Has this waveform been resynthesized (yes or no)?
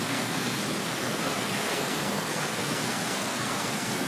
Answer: yes